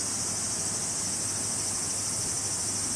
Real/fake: real